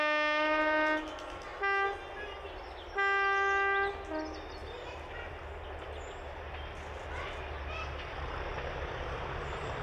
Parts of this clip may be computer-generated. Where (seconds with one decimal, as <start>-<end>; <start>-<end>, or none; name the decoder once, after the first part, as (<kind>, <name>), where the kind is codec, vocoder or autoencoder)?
none